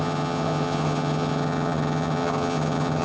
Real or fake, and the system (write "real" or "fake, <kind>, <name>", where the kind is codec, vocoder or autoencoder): fake, vocoder, HiFi-GAN